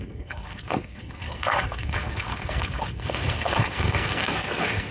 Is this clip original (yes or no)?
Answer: no